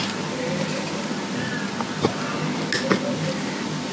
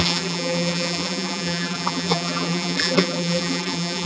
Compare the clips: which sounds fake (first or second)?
second